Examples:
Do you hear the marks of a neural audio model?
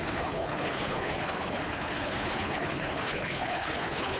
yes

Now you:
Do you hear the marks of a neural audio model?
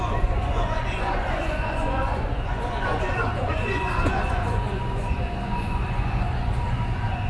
yes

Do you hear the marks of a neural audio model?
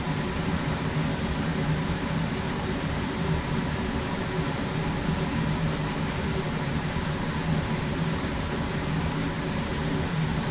yes